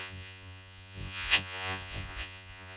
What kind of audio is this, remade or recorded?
remade